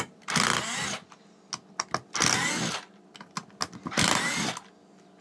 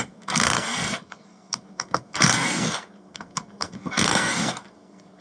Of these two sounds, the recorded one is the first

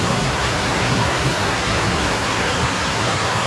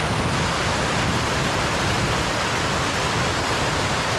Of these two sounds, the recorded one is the second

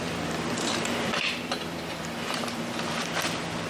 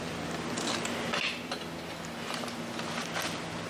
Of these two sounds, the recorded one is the second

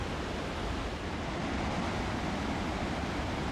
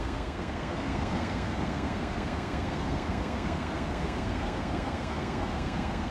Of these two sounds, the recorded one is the first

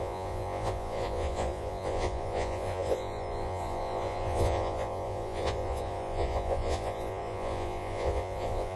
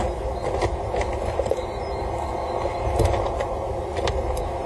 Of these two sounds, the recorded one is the second